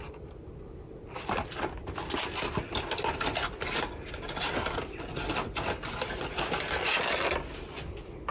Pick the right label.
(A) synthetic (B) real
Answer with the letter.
B